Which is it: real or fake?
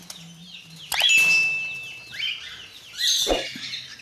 real